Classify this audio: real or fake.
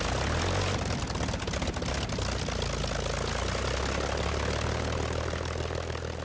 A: real